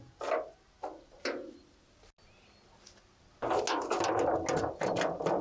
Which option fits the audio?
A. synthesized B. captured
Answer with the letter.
B